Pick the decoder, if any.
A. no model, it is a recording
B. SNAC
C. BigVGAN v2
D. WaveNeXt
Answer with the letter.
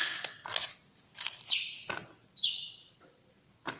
A